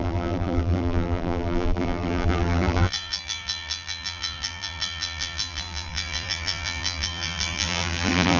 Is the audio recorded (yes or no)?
no